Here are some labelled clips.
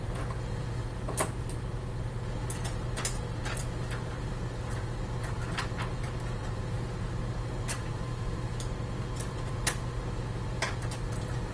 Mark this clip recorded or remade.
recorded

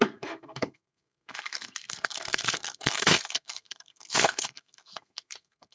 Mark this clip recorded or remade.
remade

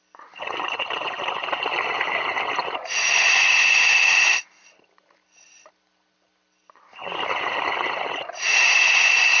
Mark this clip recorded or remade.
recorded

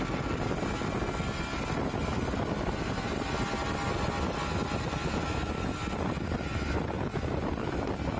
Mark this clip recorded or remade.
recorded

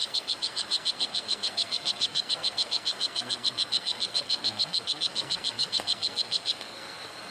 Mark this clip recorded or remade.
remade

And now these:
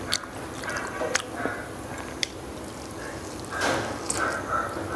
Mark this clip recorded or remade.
recorded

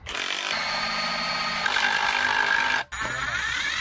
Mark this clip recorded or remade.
recorded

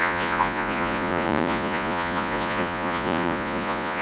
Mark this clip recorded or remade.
remade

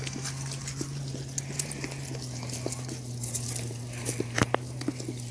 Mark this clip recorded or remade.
recorded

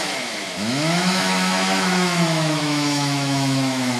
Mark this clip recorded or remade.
remade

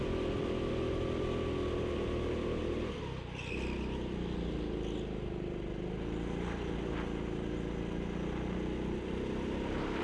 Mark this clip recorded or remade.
recorded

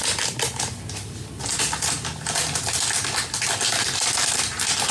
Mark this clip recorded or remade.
recorded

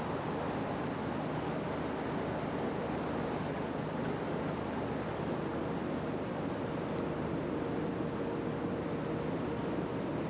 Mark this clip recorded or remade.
recorded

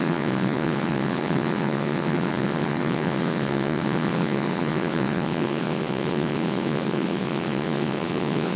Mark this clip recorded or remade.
remade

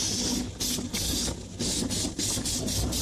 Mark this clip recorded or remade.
recorded